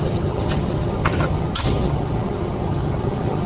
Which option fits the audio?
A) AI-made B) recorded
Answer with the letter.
A